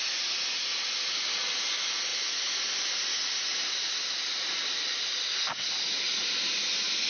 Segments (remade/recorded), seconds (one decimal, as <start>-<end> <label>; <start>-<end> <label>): 0.0-7.1 recorded